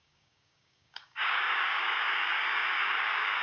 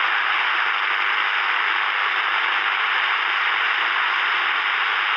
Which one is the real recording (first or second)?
second